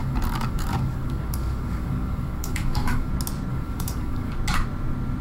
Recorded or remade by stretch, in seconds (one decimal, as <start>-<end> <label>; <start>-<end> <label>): 0.0-3.1 remade; 3.1-3.5 recorded; 3.5-4.3 remade; 4.3-5.2 recorded